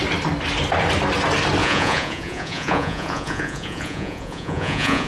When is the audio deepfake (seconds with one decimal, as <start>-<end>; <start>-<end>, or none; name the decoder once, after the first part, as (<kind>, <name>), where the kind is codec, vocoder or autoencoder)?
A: 1.6-5.1 (vocoder, Vocos)